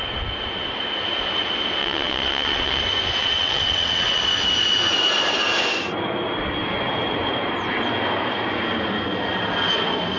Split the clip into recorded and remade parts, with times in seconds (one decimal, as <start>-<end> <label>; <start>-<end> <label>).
0.0-1.8 recorded; 1.8-2.8 remade; 2.8-3.2 recorded; 3.2-4.2 remade; 4.2-10.2 recorded